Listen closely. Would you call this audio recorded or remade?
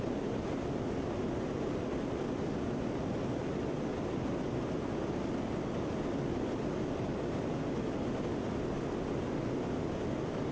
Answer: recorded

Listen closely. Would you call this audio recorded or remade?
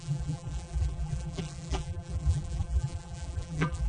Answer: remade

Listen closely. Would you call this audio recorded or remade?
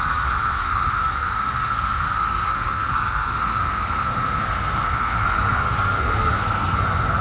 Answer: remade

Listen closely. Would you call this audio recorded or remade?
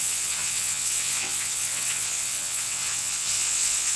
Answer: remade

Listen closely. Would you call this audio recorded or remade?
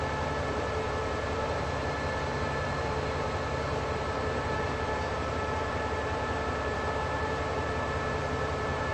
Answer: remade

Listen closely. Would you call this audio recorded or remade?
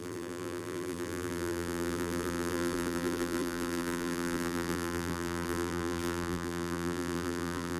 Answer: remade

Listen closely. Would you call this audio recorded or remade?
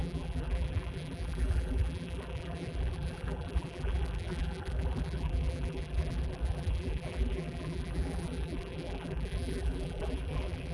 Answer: remade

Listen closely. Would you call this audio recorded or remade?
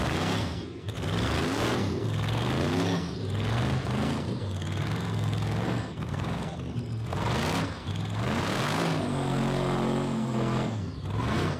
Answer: remade